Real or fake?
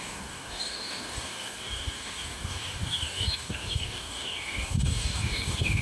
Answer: fake